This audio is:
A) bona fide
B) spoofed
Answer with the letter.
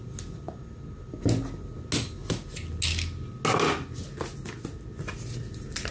A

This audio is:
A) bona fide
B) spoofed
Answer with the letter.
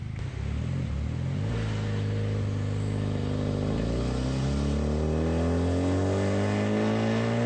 A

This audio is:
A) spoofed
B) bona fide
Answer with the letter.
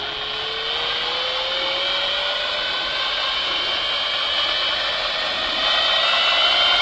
B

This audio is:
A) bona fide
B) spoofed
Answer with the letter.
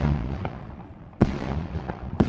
B